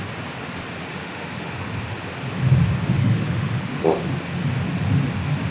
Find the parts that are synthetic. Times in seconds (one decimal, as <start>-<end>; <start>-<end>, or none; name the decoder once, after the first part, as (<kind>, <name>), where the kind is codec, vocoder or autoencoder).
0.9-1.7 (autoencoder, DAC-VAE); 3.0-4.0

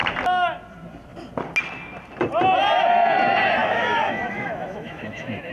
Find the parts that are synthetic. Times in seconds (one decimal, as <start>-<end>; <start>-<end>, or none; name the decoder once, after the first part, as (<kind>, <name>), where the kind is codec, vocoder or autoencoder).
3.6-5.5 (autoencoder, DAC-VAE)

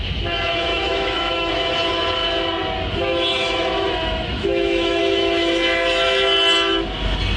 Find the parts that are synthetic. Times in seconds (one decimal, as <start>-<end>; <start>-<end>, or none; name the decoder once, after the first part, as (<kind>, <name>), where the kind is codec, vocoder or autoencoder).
0.7-1.5 (autoencoder, DAC-VAE); 3.3-5.0

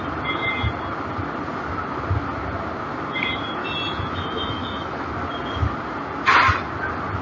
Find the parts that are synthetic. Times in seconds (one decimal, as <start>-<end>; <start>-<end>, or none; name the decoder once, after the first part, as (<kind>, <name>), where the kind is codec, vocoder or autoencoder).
3.6-5.1 (autoencoder, DAC-VAE)

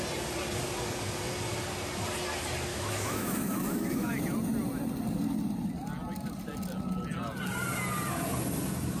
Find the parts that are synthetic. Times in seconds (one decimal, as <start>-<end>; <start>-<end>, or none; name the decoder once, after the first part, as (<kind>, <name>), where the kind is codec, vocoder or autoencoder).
2.7-4.1 (autoencoder, DAC-VAE)